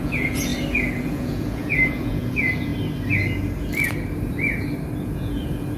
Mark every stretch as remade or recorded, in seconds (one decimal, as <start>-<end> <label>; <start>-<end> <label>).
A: 0.0-0.5 remade; 0.5-1.0 recorded; 1.0-2.7 remade; 2.7-5.0 recorded; 5.0-5.8 remade